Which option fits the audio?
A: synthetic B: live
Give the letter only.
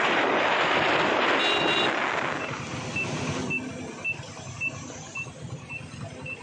B